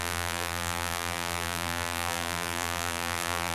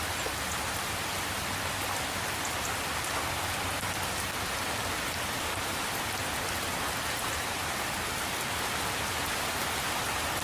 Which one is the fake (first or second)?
first